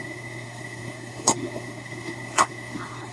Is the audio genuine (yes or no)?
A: no